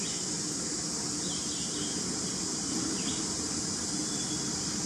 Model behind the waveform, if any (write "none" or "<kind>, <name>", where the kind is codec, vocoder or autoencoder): none